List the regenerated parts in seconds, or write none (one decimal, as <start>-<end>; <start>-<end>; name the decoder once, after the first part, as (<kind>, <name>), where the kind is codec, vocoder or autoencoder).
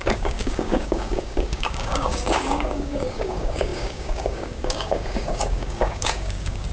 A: 0.0-6.7 (codec, DAC)